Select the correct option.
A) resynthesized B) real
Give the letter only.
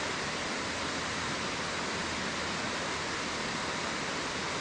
B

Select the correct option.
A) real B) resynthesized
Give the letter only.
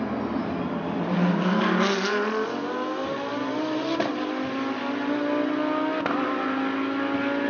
A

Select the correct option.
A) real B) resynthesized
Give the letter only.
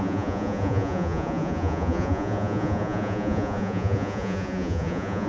B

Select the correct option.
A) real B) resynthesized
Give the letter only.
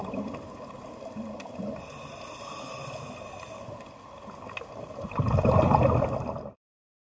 A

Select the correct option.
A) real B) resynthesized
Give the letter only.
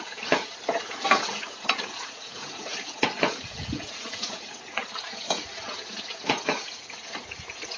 B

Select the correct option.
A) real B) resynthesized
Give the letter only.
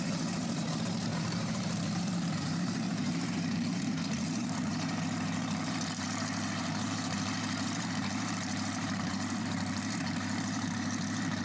B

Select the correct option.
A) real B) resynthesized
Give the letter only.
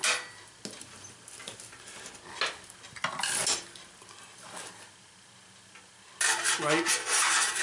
A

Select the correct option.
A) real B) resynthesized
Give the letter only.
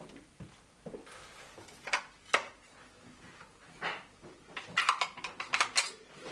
A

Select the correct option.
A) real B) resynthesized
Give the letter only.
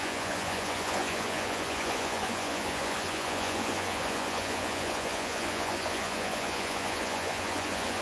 B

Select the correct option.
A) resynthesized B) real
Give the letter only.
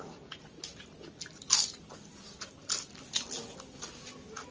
B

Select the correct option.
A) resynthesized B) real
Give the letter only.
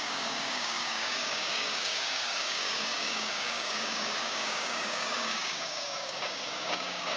A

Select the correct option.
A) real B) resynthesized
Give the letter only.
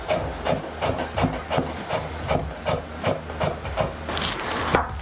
A